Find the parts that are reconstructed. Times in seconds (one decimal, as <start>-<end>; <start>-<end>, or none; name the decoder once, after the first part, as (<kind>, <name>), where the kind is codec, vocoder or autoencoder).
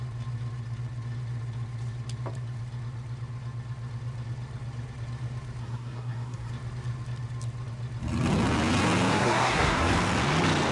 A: 5.6-6.5 (codec, SNAC); 9.1-9.9